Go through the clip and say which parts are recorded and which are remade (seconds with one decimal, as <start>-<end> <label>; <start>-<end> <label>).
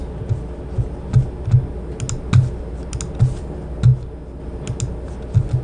0.0-5.6 recorded